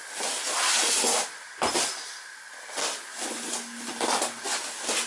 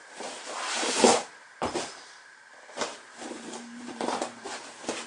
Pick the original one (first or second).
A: first